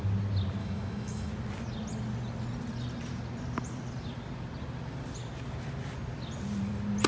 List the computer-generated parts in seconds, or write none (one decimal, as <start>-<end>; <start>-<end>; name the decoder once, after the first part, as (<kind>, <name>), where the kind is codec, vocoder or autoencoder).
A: 0.6-1.3 (autoencoder, DAC-VAE)